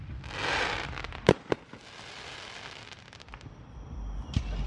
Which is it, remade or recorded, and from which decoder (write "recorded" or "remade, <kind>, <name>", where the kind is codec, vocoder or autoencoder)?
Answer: recorded